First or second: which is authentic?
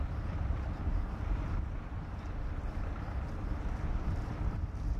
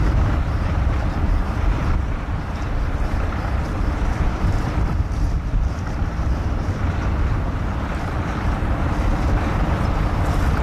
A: first